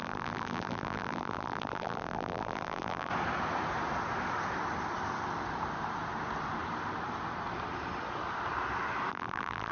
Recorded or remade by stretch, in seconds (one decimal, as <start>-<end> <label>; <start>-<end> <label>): 0.0-3.1 remade; 3.1-9.1 recorded; 9.1-9.7 remade